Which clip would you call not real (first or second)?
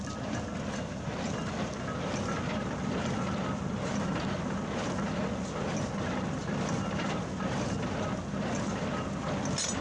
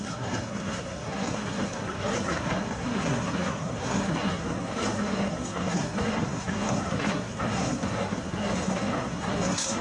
second